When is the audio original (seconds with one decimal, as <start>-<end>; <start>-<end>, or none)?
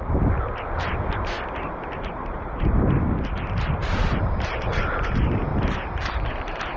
0.0-6.8